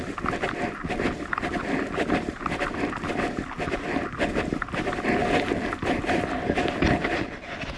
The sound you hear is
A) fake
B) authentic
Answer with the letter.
B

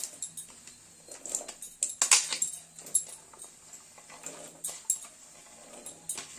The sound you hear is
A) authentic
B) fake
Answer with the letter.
A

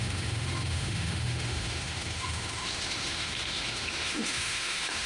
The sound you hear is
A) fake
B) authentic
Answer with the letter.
A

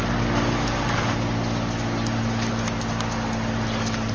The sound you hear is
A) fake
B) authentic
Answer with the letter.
B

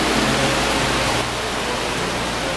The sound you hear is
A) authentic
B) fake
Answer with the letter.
A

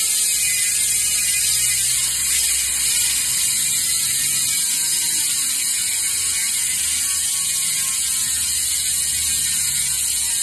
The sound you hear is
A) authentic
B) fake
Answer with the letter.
A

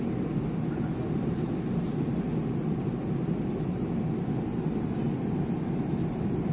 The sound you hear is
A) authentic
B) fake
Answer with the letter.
A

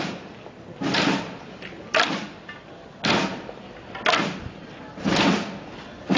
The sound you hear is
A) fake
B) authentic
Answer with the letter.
B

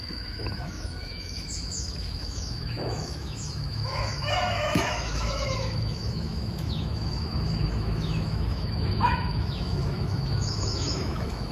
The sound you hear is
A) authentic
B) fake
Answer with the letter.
B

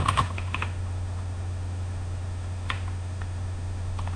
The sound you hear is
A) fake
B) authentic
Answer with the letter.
A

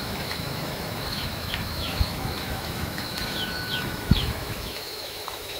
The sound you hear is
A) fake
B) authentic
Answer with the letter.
A